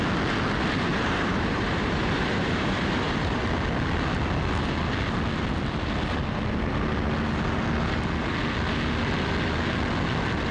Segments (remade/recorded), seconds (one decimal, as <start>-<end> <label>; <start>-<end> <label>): 0.0-0.9 recorded; 0.9-3.4 remade; 3.4-10.5 recorded